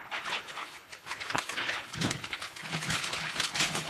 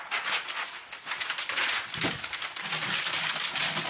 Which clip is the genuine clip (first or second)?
second